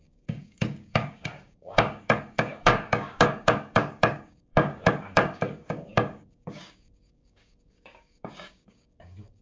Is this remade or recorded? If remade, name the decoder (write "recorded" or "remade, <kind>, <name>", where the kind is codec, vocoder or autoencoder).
remade, codec, DAC